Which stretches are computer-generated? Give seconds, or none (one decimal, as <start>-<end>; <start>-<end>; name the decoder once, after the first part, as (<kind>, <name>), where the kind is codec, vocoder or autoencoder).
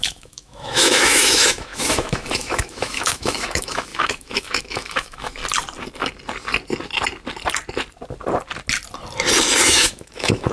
0.0-5.4 (autoencoder, DAC-VAE); 9.6-10.5